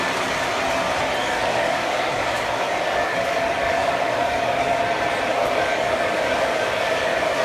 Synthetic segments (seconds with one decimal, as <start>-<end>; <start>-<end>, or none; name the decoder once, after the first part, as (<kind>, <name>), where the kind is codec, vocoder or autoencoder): 1.2-4.8 (codec, DAC); 5.3-7.4

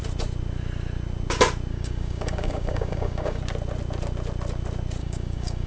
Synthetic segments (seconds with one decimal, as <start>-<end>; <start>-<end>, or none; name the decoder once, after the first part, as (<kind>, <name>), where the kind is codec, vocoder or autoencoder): 1.7-3.4 (codec, DAC); 5.0-5.7

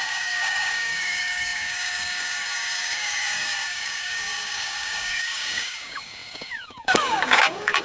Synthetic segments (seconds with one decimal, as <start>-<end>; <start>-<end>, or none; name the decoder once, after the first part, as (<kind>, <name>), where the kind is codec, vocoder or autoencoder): 0.0-7.8 (codec, DAC)

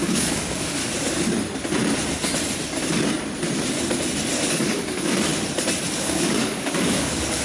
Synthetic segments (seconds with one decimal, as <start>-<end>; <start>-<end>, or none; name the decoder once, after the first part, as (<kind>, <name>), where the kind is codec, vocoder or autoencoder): 0.0-0.8 (codec, DAC); 4.5-5.3; 6.0-7.4

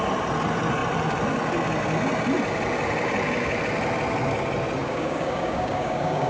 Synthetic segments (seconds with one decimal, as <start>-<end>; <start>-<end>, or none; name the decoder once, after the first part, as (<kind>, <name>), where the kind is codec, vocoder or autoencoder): 4.8-6.3 (codec, DAC)

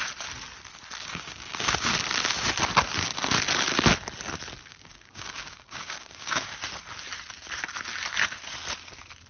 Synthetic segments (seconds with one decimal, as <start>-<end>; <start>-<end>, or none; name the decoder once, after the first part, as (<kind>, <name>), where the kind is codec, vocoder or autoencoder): 1.0-1.9 (codec, DAC); 4.7-6.6